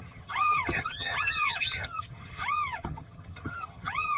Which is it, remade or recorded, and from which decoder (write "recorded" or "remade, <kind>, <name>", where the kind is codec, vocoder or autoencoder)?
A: remade, vocoder, HiFi-GAN